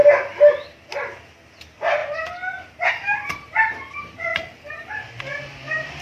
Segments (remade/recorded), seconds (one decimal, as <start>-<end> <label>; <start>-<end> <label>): 0.0-4.3 recorded; 4.3-5.2 remade; 5.2-6.0 recorded